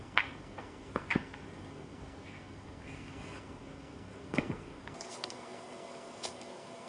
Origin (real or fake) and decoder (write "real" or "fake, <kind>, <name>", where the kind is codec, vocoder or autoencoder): fake, codec, SNAC